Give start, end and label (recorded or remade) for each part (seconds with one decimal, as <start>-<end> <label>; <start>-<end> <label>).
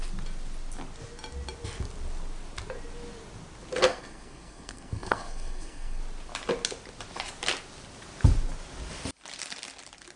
0.0-3.8 recorded; 3.8-6.0 remade; 6.0-10.2 recorded